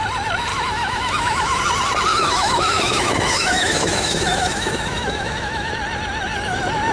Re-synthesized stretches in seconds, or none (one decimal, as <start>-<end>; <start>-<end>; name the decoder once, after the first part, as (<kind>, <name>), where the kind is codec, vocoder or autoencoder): 0.5-1.6 (autoencoder, DAC-VAE); 2.1-5.7

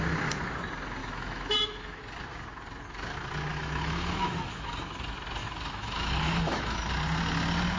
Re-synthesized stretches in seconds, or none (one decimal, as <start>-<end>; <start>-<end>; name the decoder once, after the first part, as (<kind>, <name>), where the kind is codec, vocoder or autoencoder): 1.0-2.0 (autoencoder, DAC-VAE); 3.5-4.9; 5.4-6.9

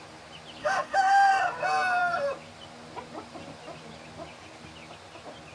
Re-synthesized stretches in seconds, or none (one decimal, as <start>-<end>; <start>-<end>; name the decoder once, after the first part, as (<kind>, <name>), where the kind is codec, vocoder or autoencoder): 0.6-1.3 (autoencoder, DAC-VAE)

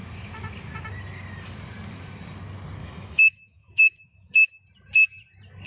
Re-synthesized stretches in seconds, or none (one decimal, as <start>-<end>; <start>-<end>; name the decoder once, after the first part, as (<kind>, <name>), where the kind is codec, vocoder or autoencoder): 2.8-4.5 (autoencoder, DAC-VAE)

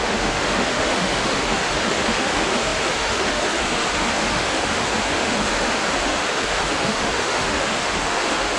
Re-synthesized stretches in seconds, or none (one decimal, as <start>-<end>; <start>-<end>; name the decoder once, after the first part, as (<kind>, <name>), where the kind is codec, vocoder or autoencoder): 0.0-8.6 (autoencoder, DAC-VAE)

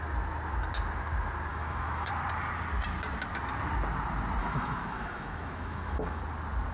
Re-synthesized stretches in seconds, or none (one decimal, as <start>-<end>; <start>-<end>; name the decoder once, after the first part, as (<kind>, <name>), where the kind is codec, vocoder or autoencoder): 1.5-2.1 (autoencoder, DAC-VAE); 4.4-6.2